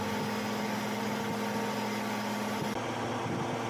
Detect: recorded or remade recorded